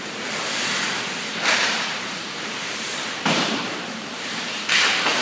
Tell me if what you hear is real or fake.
fake